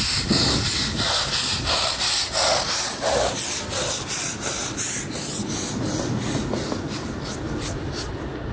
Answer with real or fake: real